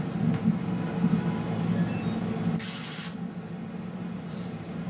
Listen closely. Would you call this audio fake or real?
real